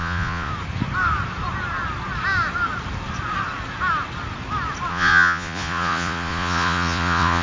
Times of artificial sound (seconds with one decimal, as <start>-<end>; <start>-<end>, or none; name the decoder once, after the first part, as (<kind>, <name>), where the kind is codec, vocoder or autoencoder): 0.0-0.5 (vocoder, Vocos); 4.9-7.4